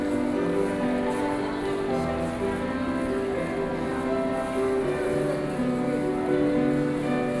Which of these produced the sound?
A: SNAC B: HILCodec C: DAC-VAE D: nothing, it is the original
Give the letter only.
D